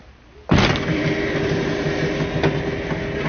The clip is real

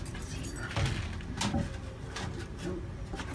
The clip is real